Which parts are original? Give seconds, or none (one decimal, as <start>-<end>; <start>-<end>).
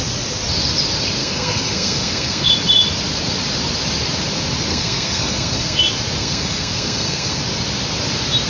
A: 0.0-1.2; 2.5-4.7; 5.8-6.2; 7.4-8.5